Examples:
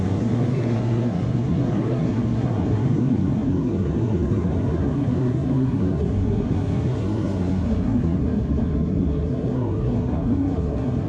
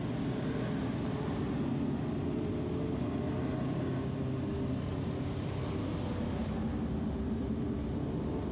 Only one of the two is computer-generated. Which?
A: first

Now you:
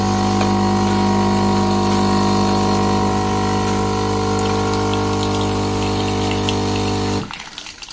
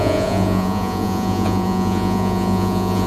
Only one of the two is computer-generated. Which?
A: second